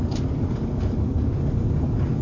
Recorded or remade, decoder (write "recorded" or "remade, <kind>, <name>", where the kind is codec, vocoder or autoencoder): recorded